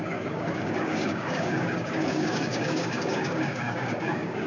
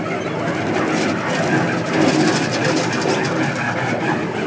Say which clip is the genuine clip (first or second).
second